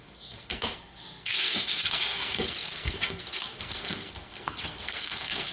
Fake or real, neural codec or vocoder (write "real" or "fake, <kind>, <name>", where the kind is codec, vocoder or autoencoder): fake, codec, SNAC